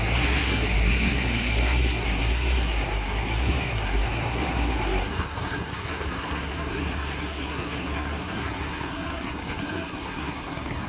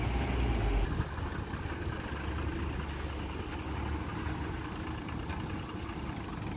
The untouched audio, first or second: second